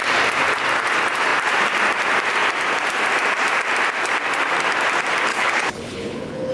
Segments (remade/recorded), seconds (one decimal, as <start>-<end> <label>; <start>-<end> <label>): 0.0-5.3 recorded; 5.3-6.5 remade